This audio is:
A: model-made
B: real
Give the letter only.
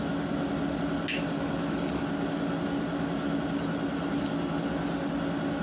B